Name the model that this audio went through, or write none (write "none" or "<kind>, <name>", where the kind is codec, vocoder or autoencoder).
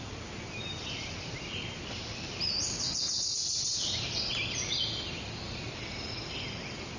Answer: vocoder, BigVGAN v2